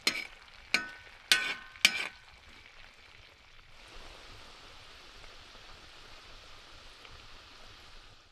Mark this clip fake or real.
real